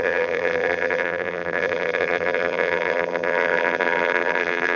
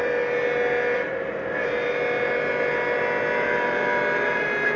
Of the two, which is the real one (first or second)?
second